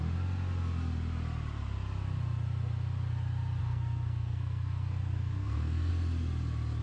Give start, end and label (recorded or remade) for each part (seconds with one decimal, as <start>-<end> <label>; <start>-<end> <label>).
0.0-3.6 recorded; 3.6-5.9 remade; 5.9-6.8 recorded